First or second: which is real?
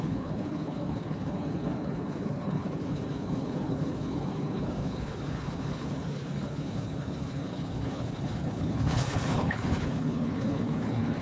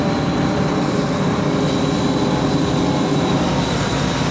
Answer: second